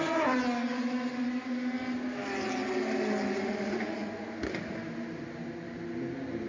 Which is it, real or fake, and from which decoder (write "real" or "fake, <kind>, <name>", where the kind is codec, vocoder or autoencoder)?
real